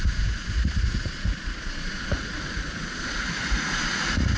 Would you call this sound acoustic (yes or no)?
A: no